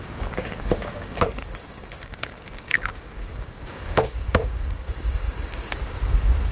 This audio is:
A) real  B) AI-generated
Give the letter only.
B